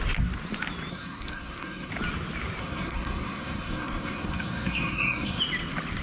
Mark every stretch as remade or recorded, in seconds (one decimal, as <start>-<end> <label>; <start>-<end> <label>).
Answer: 0.0-0.9 recorded; 0.9-1.9 remade; 1.9-2.6 recorded; 2.6-5.4 remade; 5.4-6.0 recorded